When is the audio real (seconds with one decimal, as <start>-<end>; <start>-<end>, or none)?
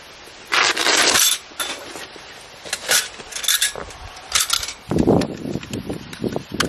0.0-0.8; 1.5-6.7